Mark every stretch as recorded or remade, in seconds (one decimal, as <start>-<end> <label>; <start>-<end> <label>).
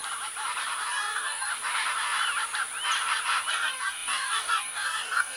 0.0-0.9 recorded; 0.9-1.5 remade; 1.5-3.5 recorded; 3.5-5.4 remade